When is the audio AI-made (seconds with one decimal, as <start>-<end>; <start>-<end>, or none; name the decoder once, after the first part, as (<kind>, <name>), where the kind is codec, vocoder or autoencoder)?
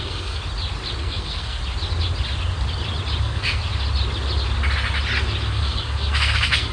0.0-0.4 (codec, SNAC); 1.0-1.6; 3.2-3.6; 5.5-6.7